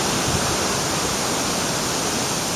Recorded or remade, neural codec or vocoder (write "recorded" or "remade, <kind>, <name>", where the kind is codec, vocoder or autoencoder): recorded